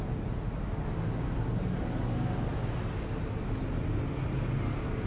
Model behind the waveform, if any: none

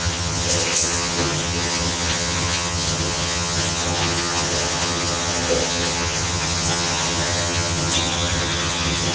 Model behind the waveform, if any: vocoder, HiFi-GAN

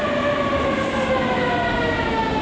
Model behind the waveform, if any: none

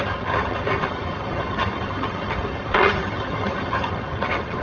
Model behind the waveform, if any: vocoder, HiFi-GAN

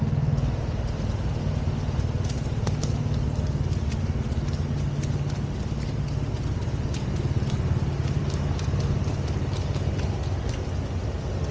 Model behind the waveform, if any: none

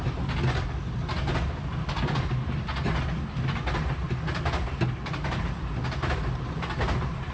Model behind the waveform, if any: none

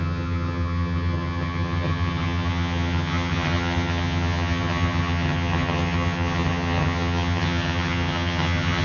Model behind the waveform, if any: vocoder, HiFi-GAN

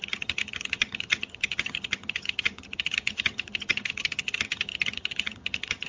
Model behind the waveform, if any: vocoder, HiFi-GAN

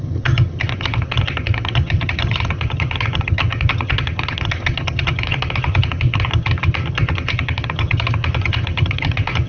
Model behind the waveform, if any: vocoder, HiFi-GAN